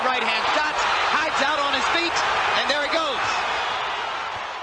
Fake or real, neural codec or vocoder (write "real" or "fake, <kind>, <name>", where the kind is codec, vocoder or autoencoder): real